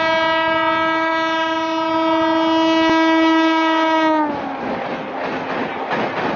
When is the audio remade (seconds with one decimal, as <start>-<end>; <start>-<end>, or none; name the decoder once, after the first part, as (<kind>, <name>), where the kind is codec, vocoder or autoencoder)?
none